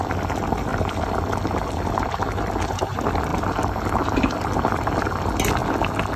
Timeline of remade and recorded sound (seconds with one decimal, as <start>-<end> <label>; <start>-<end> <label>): 0.0-6.2 recorded